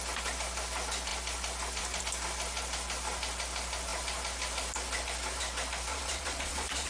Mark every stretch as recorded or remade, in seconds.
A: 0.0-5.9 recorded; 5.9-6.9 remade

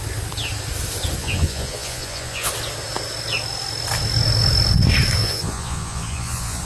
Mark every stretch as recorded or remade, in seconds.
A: 0.0-1.2 recorded; 1.2-2.5 remade; 2.5-5.2 recorded; 5.2-6.6 remade

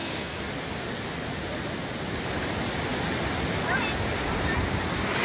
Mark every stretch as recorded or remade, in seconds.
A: 0.0-0.5 remade; 0.5-5.2 recorded